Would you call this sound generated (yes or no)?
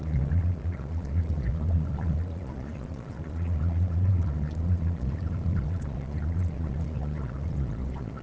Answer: yes